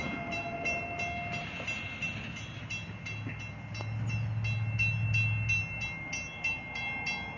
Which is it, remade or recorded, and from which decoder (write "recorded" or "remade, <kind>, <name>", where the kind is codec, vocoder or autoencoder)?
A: recorded